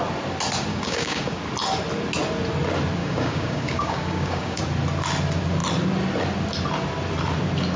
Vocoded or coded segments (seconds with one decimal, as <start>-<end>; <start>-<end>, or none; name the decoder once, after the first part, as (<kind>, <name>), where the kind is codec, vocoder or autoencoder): 0.7-1.4 (codec, DAC); 3.0-4.6